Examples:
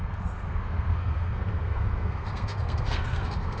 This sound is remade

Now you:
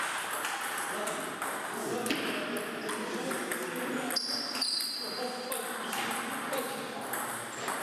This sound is recorded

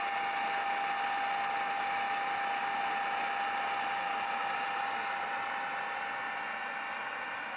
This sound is recorded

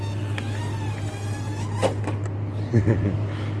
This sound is recorded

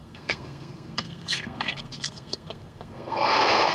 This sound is remade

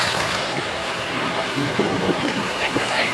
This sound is remade